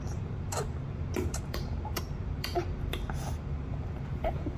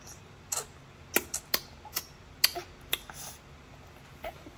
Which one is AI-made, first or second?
first